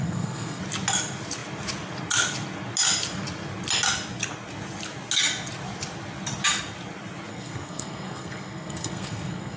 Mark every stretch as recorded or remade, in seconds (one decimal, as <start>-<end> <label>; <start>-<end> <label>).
0.0-0.6 remade; 0.6-7.3 recorded; 7.3-9.6 remade

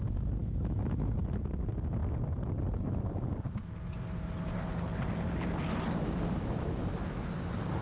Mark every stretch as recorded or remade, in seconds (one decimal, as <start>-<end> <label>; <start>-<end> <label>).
0.0-0.4 recorded; 0.4-1.2 remade; 1.2-7.8 recorded

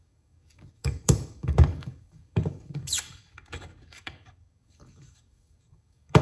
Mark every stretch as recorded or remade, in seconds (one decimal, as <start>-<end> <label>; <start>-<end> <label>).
0.0-6.2 remade

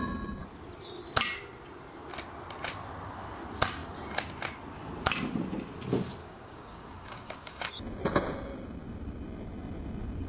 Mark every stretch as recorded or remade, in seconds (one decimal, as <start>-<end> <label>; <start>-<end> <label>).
0.0-6.2 recorded; 6.2-7.7 remade; 7.7-10.3 recorded

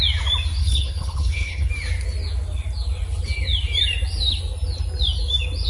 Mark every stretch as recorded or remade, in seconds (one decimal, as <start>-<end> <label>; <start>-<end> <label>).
0.0-0.6 recorded; 0.6-1.7 remade; 1.7-5.7 recorded

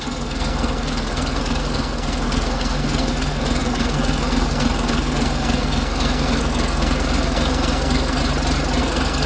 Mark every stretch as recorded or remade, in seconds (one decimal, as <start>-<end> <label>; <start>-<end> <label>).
0.0-8.2 remade; 8.2-8.8 recorded; 8.8-9.3 remade

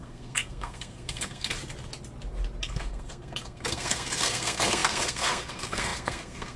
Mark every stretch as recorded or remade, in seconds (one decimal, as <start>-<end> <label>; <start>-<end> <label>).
0.0-1.5 remade; 1.5-2.6 recorded; 2.6-6.6 remade

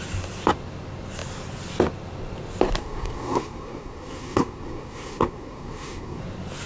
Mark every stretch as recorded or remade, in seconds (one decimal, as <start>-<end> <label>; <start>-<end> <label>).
0.0-2.8 recorded; 2.8-6.2 remade; 6.2-6.7 recorded